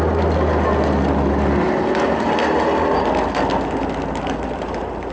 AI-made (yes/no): no